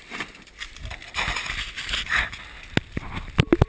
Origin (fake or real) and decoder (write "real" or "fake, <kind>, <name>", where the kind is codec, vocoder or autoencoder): real